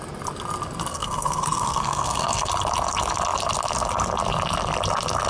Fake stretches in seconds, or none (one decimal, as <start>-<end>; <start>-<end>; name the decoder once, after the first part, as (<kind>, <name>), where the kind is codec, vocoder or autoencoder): 0.9-2.5 (codec, SNAC)